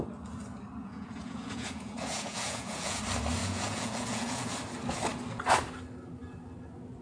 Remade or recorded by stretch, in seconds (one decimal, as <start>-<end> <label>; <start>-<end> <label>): 0.0-0.8 recorded; 0.8-3.0 remade; 3.0-3.4 recorded; 3.4-4.5 remade; 4.5-7.0 recorded